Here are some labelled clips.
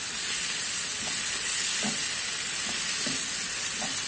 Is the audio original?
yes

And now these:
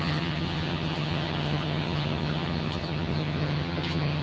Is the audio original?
no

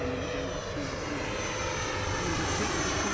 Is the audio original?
yes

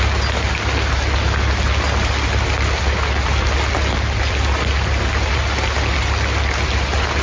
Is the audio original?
yes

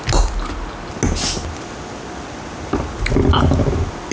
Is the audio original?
yes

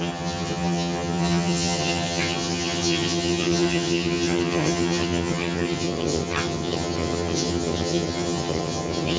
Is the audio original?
no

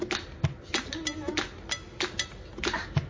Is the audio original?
yes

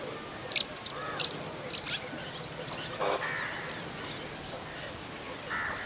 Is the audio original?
yes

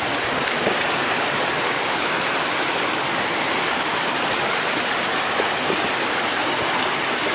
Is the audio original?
yes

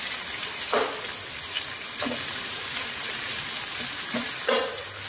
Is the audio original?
yes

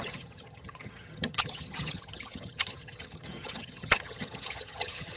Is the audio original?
no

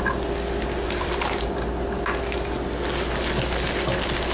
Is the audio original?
yes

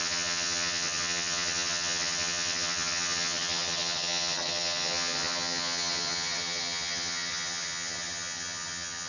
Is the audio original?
no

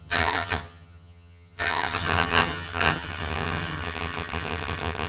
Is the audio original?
no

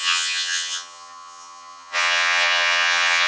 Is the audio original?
no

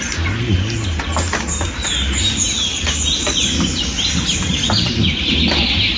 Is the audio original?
yes